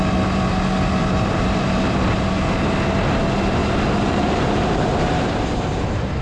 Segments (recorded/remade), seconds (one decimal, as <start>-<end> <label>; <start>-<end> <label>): 0.0-3.6 recorded; 3.6-6.2 remade